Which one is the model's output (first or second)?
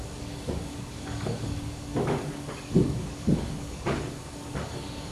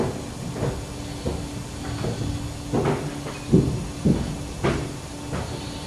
first